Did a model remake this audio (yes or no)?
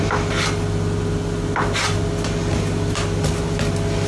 no